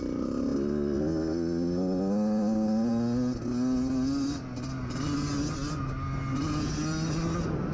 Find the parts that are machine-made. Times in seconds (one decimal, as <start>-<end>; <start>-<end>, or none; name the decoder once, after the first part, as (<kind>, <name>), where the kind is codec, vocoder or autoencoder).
none